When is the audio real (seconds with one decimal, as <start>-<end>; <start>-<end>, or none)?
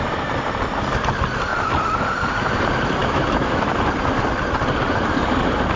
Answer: 0.0-3.0; 3.7-5.8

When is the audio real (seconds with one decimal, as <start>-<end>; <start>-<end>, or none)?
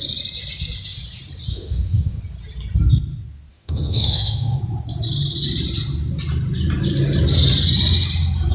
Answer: 0.0-1.5; 2.2-3.5; 4.6-8.5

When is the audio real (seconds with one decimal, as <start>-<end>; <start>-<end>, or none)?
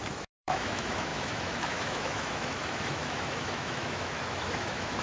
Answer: none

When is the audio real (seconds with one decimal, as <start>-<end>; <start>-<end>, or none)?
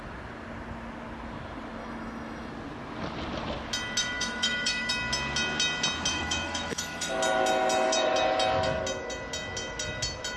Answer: 0.0-1.8; 2.5-4.0; 4.9-6.1; 7.1-10.4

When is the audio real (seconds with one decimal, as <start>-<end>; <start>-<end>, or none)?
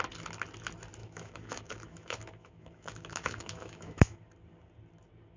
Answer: 0.0-1.0; 4.2-5.4